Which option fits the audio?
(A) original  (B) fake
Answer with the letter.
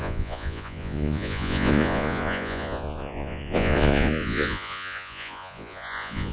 B